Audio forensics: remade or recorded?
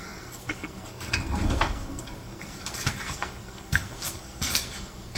remade